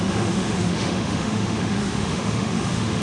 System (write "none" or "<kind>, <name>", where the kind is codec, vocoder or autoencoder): autoencoder, DAC-VAE